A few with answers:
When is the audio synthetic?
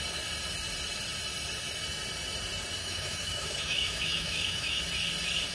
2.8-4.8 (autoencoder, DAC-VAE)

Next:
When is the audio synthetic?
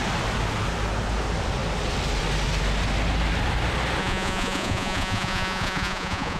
4.0-6.4 (vocoder, Vocos)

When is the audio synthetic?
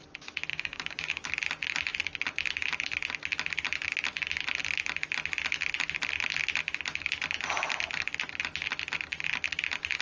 0.5-1.3 (codec, DAC)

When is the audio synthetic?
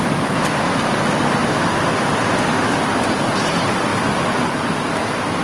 none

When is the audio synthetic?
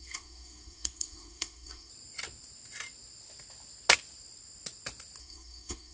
0.0-1.9 (codec, SNAC); 5.2-5.9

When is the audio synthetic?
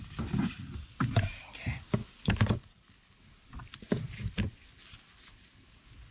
none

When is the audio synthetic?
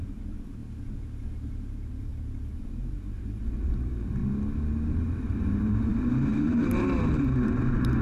0.0-0.6 (vocoder, BigVGAN v2); 1.7-4.2; 5.3-8.0